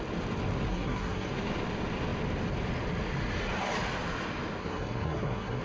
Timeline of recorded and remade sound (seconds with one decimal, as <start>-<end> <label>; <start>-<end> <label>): 0.0-0.7 recorded; 0.7-1.3 remade; 1.3-4.6 recorded; 4.6-5.6 remade